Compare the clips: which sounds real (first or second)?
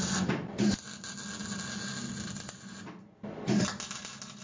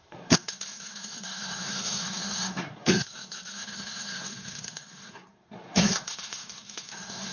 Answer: first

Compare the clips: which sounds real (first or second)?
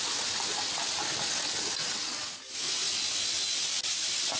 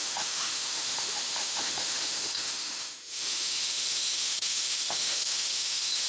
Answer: first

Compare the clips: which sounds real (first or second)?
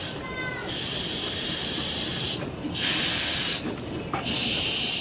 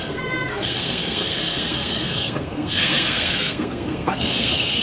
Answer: first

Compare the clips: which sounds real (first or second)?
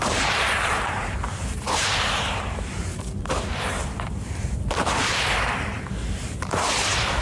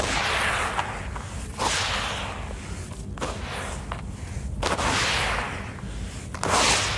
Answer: second